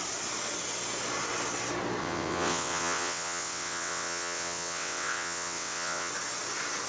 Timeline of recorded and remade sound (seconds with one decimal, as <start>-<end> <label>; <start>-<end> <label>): 0.0-2.0 recorded; 2.0-6.1 remade; 6.1-6.9 recorded